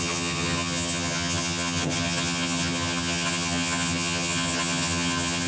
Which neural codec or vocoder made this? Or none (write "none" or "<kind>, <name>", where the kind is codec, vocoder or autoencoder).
vocoder, HiFi-GAN